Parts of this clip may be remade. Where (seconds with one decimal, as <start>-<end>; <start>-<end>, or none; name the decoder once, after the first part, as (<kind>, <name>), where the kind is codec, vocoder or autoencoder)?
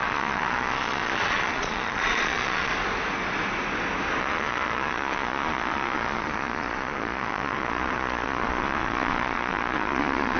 0.0-2.7 (vocoder, Vocos); 4.2-10.4